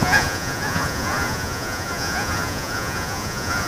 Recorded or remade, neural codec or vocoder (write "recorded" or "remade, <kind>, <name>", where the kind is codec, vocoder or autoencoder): remade, vocoder, Vocos